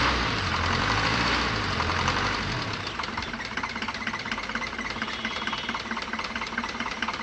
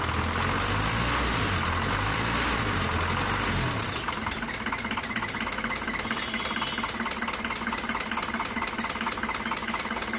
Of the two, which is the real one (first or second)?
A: second